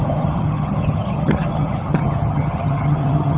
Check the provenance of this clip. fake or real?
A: fake